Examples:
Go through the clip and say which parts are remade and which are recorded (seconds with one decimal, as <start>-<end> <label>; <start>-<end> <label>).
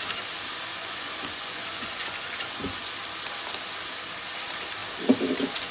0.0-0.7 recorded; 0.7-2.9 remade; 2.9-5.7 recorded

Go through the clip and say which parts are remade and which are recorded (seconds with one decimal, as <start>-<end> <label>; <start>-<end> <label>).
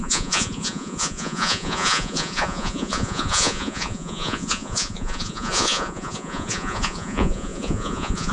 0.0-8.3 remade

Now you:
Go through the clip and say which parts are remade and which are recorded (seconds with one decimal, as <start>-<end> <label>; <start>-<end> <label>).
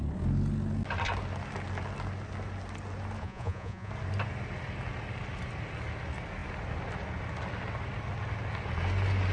0.0-3.2 recorded; 3.2-3.9 remade; 3.9-9.3 recorded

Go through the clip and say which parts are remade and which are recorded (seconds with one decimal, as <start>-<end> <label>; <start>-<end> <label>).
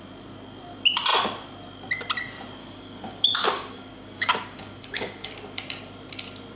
0.0-2.6 recorded; 2.6-5.3 remade; 5.3-6.6 recorded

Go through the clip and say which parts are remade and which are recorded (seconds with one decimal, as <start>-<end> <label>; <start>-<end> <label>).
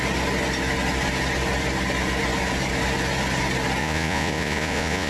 0.0-3.8 recorded; 3.8-5.1 remade